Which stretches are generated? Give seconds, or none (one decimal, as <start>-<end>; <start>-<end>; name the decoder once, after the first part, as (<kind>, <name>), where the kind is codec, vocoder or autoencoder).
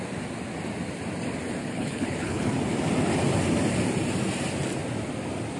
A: 1.6-2.5 (codec, HILCodec)